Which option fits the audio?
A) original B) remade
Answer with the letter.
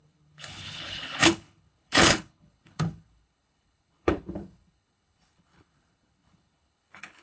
B